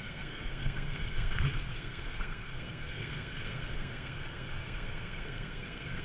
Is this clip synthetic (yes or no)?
yes